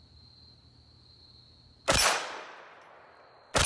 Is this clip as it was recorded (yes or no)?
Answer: yes